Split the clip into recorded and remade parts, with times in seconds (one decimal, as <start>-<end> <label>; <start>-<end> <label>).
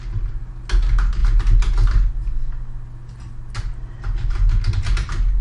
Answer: 0.0-5.4 recorded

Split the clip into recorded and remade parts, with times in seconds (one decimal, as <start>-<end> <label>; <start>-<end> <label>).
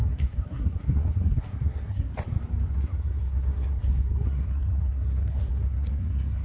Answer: 0.0-2.1 remade; 2.1-2.7 recorded; 2.7-6.4 remade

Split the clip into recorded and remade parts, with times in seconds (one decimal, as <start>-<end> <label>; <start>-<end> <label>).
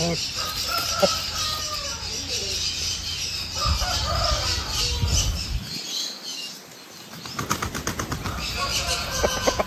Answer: 0.0-8.7 recorded; 8.7-9.7 remade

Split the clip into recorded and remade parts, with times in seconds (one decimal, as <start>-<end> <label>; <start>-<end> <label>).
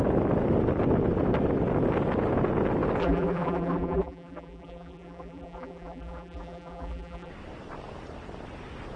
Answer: 0.0-3.0 recorded; 3.0-7.3 remade; 7.3-9.0 recorded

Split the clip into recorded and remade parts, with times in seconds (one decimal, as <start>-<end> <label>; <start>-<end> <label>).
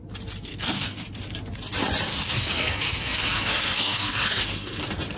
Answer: 0.0-0.5 recorded; 0.5-1.0 remade; 1.0-2.1 recorded; 2.1-4.8 remade; 4.8-5.2 recorded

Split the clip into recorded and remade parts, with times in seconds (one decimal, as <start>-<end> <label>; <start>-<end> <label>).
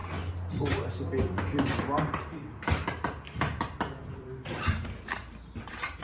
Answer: 0.0-2.1 recorded; 2.1-6.0 remade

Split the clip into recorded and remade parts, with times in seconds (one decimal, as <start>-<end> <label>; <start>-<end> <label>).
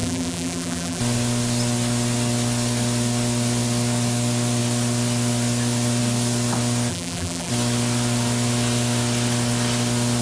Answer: 0.0-1.0 remade; 1.0-6.9 recorded; 6.9-7.5 remade; 7.5-10.2 recorded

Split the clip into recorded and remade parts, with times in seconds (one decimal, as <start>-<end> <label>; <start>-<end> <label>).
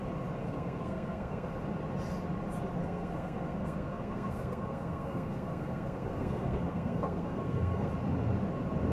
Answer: 0.0-0.4 recorded; 0.4-1.5 remade; 1.5-2.8 recorded; 2.8-7.9 remade; 7.9-8.9 recorded